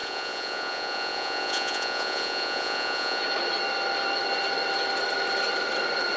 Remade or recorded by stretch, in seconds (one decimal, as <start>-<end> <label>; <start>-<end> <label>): 0.0-3.2 remade; 3.2-6.2 recorded

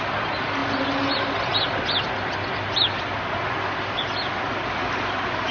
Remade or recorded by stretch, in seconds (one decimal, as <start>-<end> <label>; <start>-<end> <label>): 0.0-5.5 recorded